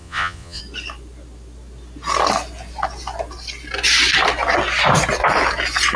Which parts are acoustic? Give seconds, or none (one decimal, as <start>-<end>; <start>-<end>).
0.6-6.0